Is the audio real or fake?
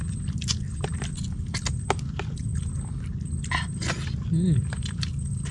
real